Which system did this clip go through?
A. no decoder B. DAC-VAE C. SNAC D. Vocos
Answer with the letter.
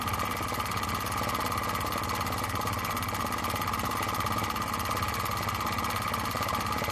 A